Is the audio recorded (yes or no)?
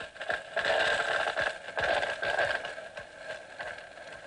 yes